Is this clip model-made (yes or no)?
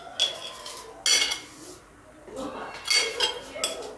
no